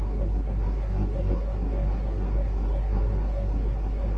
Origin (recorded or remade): remade